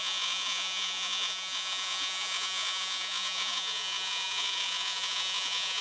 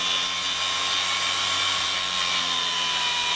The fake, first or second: first